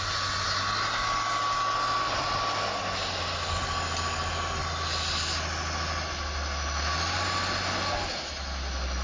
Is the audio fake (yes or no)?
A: no